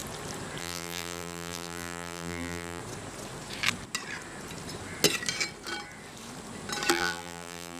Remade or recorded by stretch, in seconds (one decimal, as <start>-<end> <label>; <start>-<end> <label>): 0.0-0.6 recorded; 0.6-2.8 remade; 2.8-6.9 recorded; 6.9-7.8 remade